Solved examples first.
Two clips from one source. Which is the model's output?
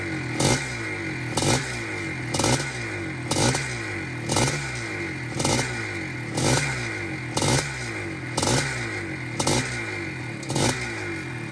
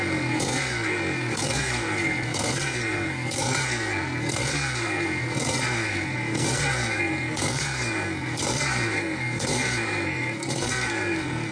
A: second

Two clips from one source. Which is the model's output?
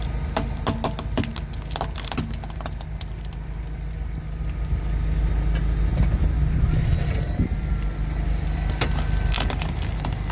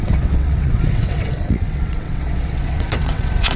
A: second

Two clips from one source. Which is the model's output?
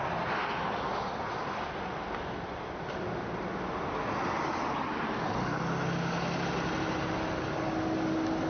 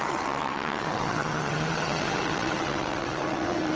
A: second